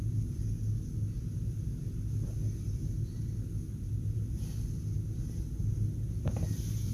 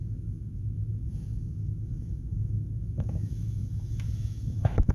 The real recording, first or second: first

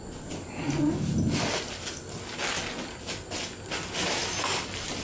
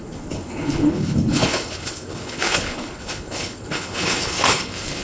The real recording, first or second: first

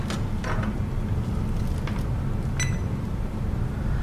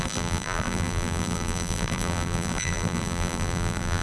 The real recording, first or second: first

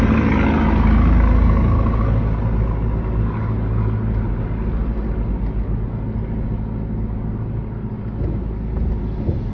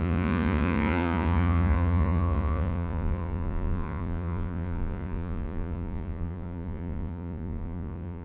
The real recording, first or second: first